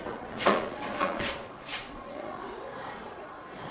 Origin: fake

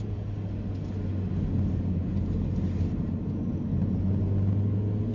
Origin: real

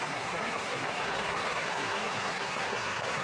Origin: fake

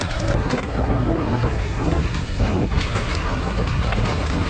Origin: fake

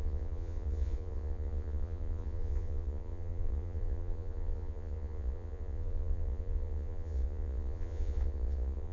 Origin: fake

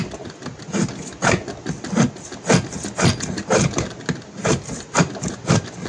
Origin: real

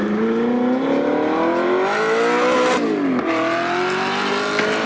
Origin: real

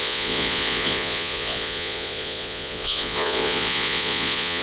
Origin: fake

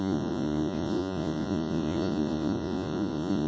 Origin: fake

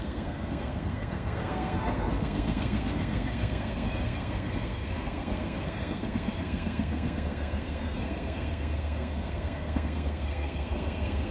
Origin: fake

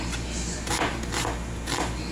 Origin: real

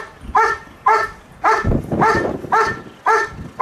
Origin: real